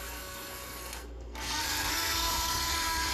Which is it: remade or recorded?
remade